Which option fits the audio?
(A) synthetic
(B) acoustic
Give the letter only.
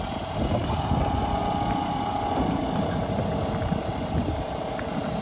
B